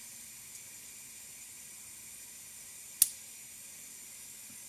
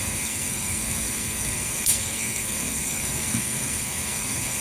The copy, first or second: second